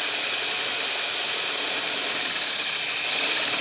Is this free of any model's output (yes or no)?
yes